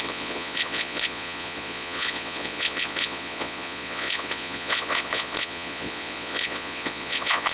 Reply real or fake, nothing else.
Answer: fake